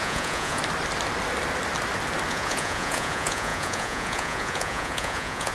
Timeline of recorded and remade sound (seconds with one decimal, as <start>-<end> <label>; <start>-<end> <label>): 0.0-0.6 remade; 0.6-2.3 recorded; 2.3-5.5 remade